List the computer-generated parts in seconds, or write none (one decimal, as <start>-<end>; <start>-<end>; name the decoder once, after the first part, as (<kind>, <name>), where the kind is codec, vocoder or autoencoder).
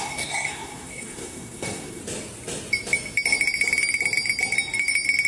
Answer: 0.0-2.0 (codec, SNAC)